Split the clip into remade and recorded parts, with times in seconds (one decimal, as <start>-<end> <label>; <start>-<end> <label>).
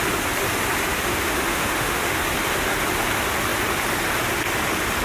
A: 0.0-1.1 recorded; 1.1-2.2 remade; 2.2-5.0 recorded